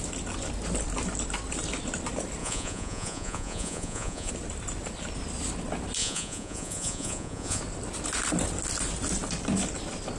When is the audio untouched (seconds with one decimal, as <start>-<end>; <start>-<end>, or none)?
0.0-2.4; 4.3-6.0; 7.6-10.2